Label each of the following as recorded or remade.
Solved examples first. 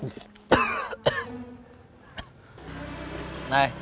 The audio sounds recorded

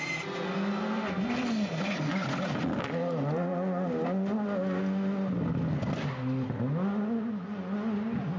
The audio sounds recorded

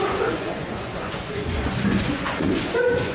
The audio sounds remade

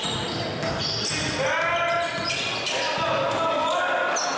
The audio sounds recorded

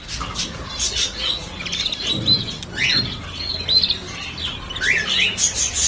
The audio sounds recorded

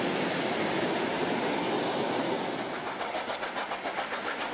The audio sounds recorded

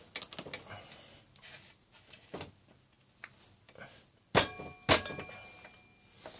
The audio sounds recorded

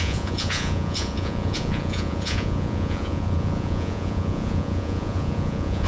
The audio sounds remade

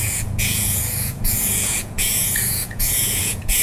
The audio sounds remade